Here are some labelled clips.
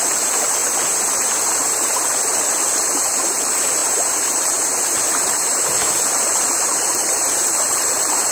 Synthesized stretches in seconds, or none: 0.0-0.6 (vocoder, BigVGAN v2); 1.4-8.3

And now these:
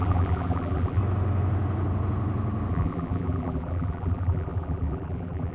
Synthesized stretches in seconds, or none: 0.0-1.0 (vocoder, BigVGAN v2); 2.7-5.5